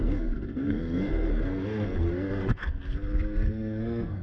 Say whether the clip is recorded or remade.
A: remade